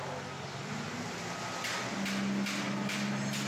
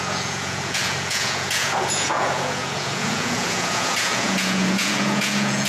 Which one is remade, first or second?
second